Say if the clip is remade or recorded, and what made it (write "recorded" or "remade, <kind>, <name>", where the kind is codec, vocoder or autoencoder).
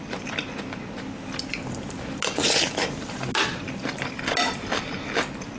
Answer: recorded